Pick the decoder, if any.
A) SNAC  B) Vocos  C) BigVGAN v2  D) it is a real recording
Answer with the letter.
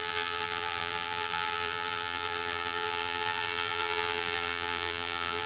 C